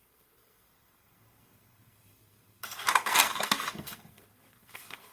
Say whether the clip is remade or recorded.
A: remade